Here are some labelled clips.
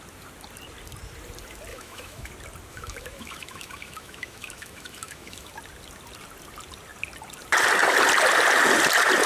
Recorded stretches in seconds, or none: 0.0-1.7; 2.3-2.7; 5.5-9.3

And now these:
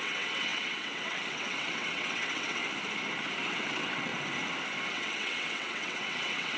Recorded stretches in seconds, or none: 2.6-3.5; 4.1-4.9

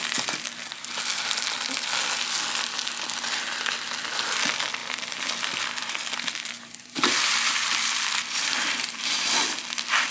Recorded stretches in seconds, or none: 0.0-4.8; 9.0-10.1

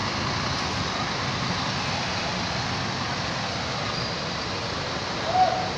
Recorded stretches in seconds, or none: 0.0-5.8

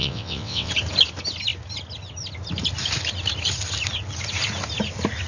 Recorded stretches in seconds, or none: 0.7-5.3

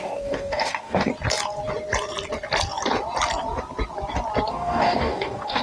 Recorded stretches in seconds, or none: 1.1-4.5